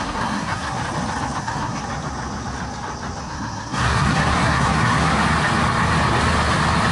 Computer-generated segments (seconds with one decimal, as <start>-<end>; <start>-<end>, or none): 0.0-0.8; 1.4-1.8; 3.2-5.2

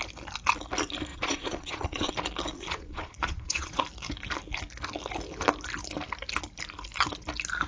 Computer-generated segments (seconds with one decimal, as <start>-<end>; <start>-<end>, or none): 1.1-2.1; 2.5-3.8

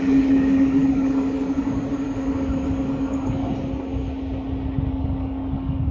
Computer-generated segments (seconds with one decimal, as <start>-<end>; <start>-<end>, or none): 0.0-3.4; 4.9-5.9

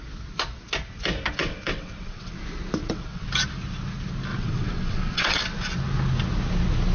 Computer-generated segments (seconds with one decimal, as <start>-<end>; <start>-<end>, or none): 1.4-2.4; 2.8-3.3; 4.3-5.4

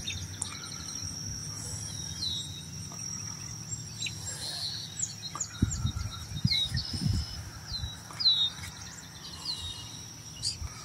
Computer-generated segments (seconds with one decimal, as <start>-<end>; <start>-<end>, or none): none

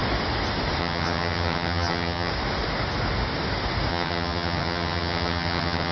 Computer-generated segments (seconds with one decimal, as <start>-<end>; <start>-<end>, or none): 0.8-2.3; 3.9-5.9

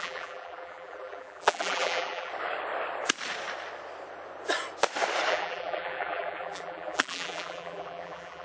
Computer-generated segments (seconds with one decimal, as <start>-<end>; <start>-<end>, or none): 0.0-2.3; 5.3-8.4

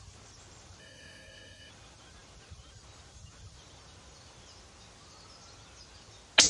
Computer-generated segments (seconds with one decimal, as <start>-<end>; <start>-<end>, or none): 0.8-1.7